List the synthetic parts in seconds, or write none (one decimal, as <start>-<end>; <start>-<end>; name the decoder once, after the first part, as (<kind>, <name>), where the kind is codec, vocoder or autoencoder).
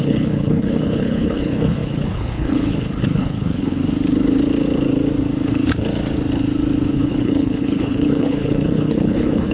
0.0-3.8 (codec, HILCodec); 6.9-9.5